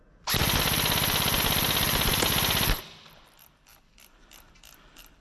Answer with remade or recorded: remade